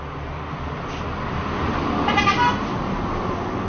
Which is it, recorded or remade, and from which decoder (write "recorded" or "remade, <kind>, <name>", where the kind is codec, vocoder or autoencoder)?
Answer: recorded